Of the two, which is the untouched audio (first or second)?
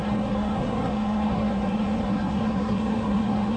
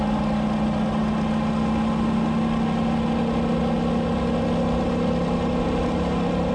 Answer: second